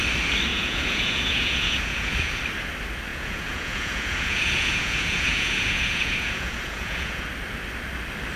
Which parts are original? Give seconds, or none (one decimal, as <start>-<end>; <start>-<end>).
0.0-0.5; 2.4-3.1; 7.3-8.4